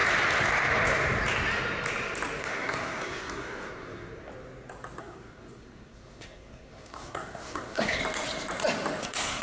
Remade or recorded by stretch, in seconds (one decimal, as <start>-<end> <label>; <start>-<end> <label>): 0.0-2.4 recorded; 2.4-4.3 remade; 4.3-5.0 recorded; 5.0-8.0 remade; 8.0-9.0 recorded; 9.0-9.4 remade